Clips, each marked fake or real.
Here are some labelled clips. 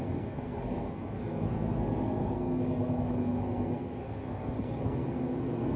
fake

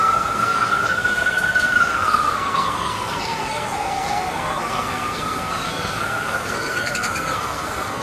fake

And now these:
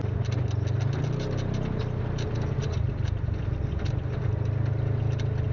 real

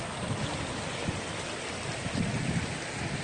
real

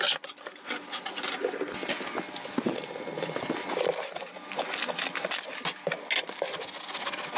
real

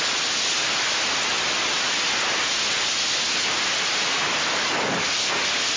real